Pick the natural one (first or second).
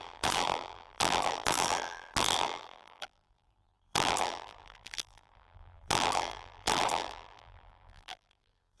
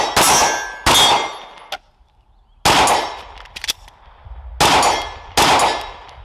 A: second